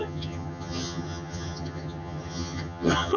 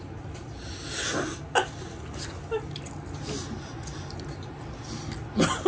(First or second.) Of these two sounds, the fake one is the first